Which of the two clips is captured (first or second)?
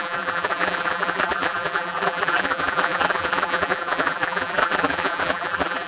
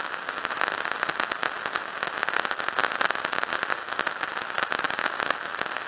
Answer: second